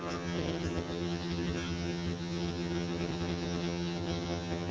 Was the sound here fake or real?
fake